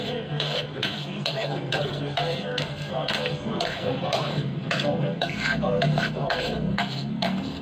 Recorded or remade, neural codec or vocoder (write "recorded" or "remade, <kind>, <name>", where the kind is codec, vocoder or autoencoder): remade, codec, SNAC